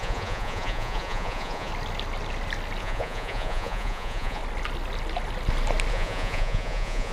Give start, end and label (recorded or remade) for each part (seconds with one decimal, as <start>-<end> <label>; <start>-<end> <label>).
0.0-1.7 remade; 1.7-2.8 recorded; 2.8-4.4 remade; 4.4-5.9 recorded; 5.9-7.1 remade

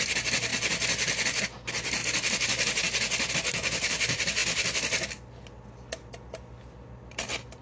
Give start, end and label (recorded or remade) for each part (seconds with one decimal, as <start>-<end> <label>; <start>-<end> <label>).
0.0-7.6 recorded

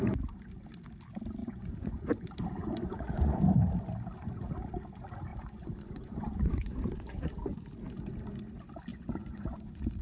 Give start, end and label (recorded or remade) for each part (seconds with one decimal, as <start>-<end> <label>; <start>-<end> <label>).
0.0-1.4 recorded; 1.4-2.0 remade; 2.0-2.6 recorded; 2.6-3.7 remade; 3.7-5.3 recorded; 5.3-7.4 remade; 7.4-8.9 recorded; 8.9-10.0 remade

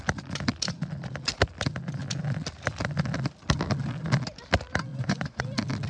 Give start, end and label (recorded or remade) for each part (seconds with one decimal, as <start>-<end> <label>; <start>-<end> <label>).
0.0-4.9 recorded; 4.9-5.4 remade; 5.4-5.9 recorded

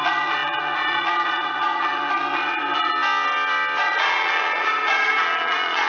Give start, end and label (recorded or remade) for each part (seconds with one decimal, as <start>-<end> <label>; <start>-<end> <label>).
0.0-2.9 remade; 2.9-3.8 recorded; 3.8-5.9 remade

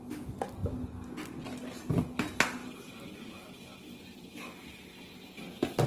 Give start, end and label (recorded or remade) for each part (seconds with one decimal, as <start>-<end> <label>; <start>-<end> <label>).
0.0-5.9 recorded

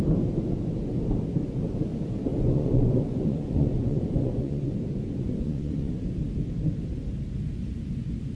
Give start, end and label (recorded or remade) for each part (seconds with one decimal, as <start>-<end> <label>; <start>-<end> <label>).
0.0-2.3 recorded; 2.3-4.7 remade; 4.7-5.2 recorded; 5.2-6.0 remade; 6.0-8.4 recorded

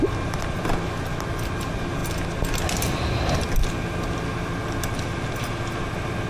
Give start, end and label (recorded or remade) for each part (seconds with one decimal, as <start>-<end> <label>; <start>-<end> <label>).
0.0-6.3 recorded